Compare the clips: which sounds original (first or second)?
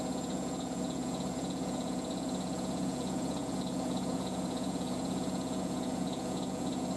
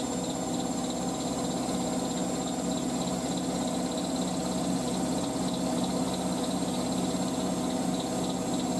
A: second